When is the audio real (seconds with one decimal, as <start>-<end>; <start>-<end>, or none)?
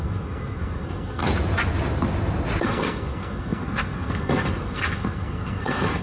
1.2-2.6